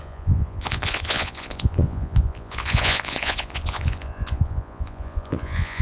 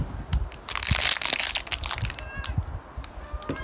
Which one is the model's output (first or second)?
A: first